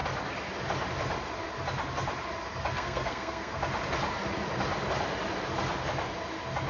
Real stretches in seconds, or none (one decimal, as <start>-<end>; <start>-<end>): 0.0-2.7; 3.6-6.7